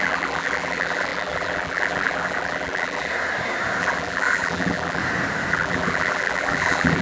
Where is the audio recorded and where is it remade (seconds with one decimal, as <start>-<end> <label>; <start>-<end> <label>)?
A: 0.0-3.1 remade; 3.1-3.8 recorded; 3.8-5.0 remade; 5.0-5.5 recorded; 5.5-7.0 remade